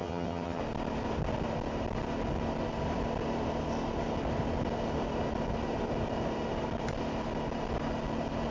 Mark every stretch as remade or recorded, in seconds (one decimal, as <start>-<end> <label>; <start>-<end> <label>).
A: 0.0-0.6 remade; 0.6-8.5 recorded